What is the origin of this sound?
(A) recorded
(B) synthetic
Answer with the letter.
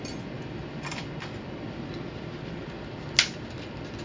A